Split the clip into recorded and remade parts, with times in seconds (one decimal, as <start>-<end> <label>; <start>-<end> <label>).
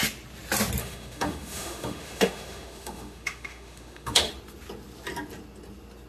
0.0-0.8 recorded; 0.8-4.3 remade; 4.3-6.1 recorded